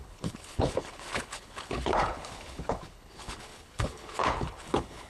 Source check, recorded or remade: remade